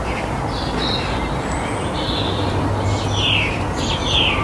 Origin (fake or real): real